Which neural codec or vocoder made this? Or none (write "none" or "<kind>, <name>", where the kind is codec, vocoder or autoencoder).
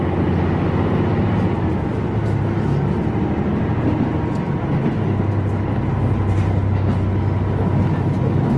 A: none